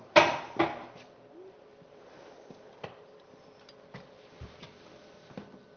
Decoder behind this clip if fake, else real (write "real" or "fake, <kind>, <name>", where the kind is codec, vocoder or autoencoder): real